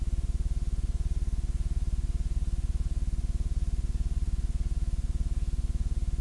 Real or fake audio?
real